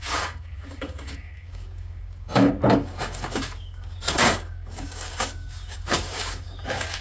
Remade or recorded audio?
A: remade